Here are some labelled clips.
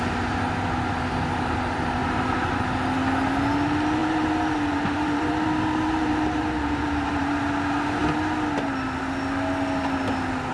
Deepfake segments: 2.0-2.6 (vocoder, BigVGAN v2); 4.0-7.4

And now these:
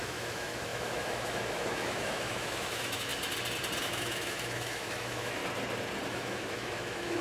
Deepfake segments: 0.0-3.1 (autoencoder, DAC-VAE); 3.8-5.4; 6.1-7.2

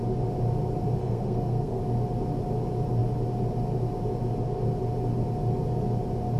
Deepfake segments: 1.0-1.8 (codec, SNAC)

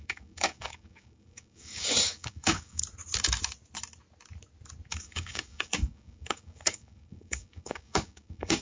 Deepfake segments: 0.0-2.8 (codec, DAC); 4.9-8.6

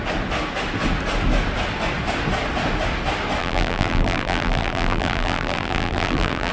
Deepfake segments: 3.4-6.5 (vocoder, BigVGAN v2)